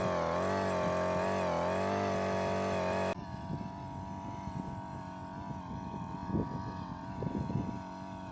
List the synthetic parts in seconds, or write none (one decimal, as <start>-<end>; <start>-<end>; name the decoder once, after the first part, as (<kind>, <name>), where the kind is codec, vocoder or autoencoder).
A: none